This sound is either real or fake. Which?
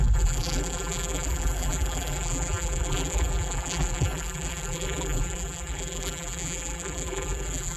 fake